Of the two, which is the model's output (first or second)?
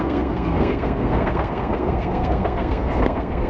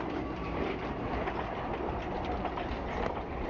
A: first